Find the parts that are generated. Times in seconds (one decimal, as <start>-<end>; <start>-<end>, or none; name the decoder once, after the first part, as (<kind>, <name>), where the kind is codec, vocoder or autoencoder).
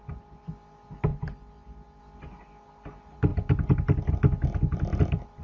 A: none